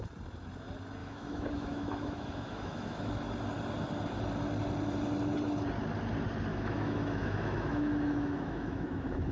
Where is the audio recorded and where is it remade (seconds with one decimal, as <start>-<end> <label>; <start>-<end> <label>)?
0.0-1.0 recorded; 1.0-3.1 remade; 3.1-6.5 recorded; 6.5-9.3 remade